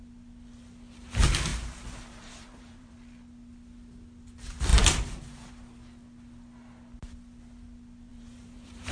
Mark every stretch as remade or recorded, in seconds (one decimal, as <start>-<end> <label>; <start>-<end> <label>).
0.0-1.5 recorded; 1.5-2.9 remade; 2.9-8.1 recorded; 8.1-8.9 remade